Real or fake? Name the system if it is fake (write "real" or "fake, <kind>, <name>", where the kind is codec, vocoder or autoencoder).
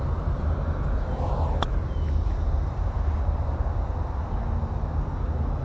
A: real